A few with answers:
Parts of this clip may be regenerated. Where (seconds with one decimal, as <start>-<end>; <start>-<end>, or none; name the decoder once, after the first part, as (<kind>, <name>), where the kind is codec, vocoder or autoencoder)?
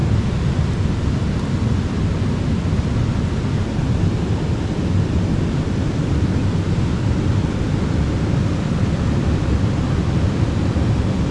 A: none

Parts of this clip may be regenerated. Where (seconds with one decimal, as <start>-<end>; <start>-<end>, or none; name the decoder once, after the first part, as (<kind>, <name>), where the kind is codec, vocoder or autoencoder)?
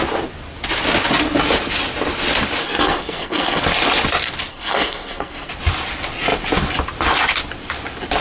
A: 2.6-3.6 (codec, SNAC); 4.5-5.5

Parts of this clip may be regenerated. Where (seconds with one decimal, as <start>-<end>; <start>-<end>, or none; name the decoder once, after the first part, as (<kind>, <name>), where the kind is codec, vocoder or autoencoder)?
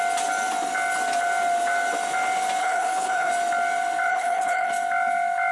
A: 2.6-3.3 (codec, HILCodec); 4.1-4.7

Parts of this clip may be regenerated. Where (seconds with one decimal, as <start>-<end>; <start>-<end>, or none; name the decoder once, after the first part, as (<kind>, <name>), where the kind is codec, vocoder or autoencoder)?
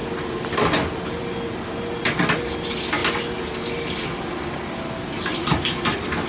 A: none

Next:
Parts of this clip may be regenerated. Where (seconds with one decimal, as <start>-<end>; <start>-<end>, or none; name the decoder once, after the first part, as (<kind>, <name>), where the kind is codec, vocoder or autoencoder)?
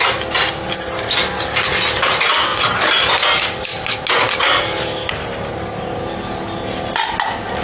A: none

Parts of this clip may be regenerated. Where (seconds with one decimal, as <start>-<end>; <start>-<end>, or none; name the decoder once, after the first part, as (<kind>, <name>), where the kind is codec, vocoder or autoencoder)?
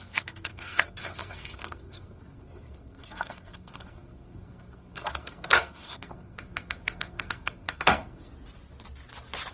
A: 0.0-8.3 (codec, SNAC)